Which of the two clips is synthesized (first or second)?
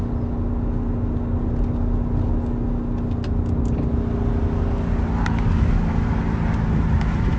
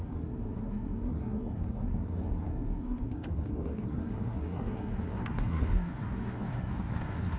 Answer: second